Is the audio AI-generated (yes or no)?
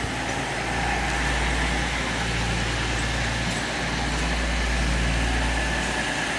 no